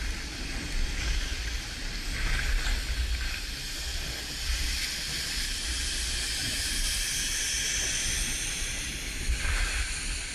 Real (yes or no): yes